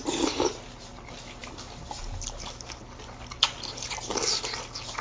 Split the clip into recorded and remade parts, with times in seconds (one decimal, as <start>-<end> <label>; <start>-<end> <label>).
0.0-5.0 recorded